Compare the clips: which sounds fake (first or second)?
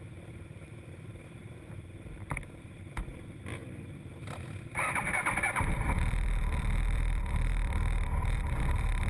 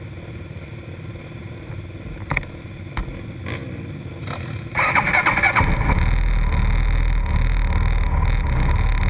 first